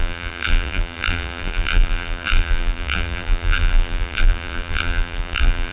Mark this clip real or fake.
fake